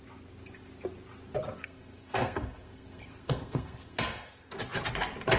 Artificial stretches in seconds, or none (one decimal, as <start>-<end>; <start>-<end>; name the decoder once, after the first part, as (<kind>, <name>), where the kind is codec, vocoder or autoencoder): 1.6-4.5 (codec, SNAC)